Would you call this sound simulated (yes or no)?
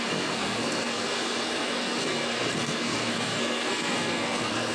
yes